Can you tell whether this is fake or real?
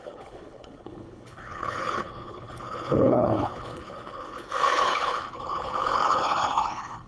fake